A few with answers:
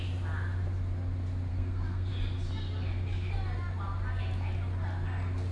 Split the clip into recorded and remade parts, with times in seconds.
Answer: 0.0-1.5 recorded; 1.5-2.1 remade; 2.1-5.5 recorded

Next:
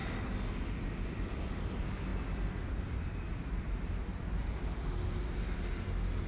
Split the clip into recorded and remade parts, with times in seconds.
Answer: 0.0-1.5 remade; 1.5-2.1 recorded; 2.1-6.3 remade